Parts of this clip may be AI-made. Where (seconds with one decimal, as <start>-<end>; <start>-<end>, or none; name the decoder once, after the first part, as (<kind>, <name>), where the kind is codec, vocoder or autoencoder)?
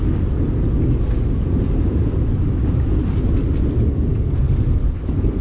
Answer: 4.1-5.4 (codec, SNAC)